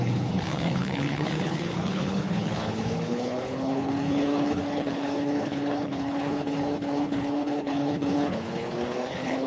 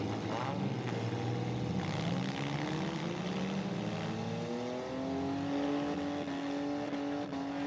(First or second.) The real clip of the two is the second